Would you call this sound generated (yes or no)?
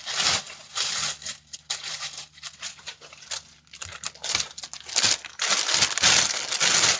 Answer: no